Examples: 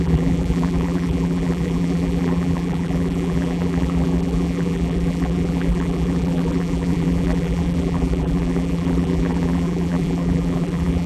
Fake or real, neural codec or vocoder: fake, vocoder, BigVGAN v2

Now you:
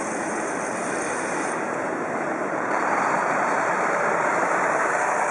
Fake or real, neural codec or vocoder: fake, vocoder, BigVGAN v2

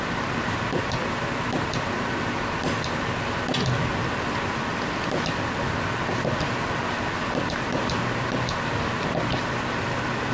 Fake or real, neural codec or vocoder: real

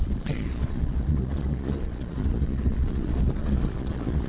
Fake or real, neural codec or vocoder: fake, vocoder, Vocos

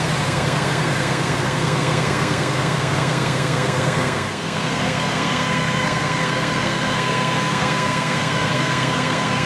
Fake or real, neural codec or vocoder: fake, codec, SNAC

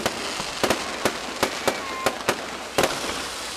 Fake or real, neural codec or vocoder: real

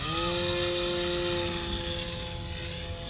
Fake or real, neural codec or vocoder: real